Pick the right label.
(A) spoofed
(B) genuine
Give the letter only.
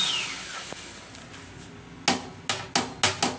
B